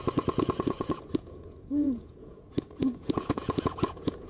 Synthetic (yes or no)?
yes